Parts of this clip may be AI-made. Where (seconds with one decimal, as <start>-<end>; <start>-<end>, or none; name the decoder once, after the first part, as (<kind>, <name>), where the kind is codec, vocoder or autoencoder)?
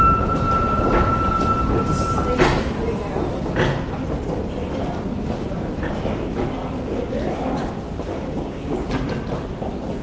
8.1-8.9 (codec, DAC)